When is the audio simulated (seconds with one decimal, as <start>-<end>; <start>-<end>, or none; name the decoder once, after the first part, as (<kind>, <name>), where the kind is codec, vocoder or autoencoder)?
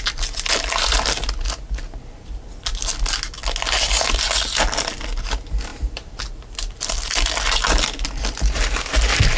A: 5.7-6.3 (vocoder, BigVGAN v2)